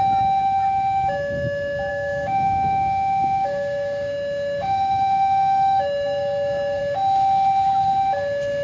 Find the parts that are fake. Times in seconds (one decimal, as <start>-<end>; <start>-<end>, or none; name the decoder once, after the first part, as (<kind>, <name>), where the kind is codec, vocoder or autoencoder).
1.9-6.8 (codec, DAC)